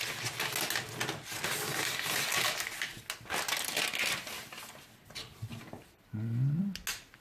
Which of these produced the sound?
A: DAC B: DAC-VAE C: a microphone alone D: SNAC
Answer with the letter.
C